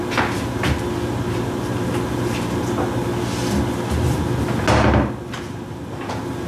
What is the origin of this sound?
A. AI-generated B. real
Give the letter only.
B